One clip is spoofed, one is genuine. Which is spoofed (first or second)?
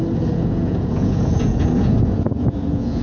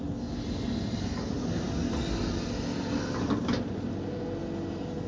first